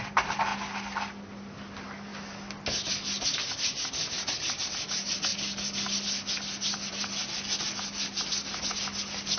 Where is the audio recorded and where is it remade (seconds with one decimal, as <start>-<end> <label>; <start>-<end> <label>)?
0.0-9.4 recorded